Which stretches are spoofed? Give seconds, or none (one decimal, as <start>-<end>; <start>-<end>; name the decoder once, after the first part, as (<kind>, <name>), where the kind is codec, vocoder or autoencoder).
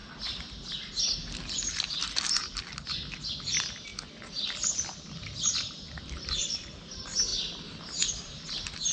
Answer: none